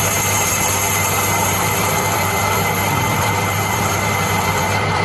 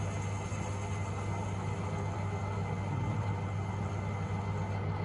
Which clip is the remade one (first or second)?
first